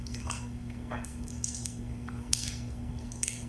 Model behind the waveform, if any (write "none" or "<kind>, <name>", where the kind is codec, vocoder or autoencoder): codec, SNAC